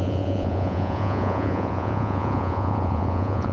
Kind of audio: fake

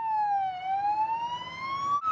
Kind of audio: real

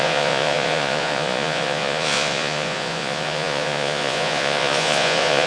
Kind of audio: fake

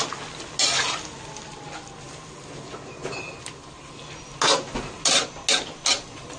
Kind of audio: real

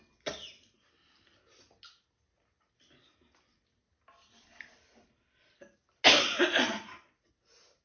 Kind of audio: real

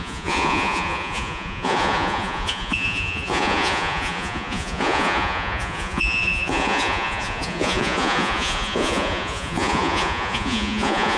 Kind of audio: fake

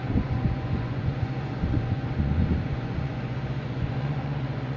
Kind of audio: fake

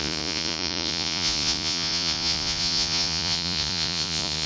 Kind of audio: fake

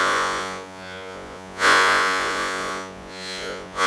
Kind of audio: fake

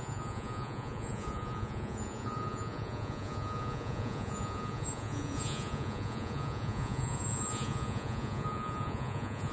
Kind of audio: fake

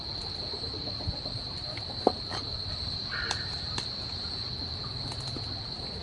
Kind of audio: real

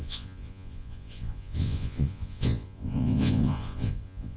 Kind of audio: fake